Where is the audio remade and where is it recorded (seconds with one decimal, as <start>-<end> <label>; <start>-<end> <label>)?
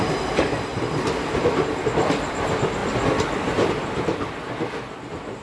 0.0-5.4 recorded